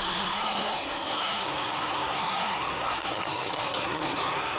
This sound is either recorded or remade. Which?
remade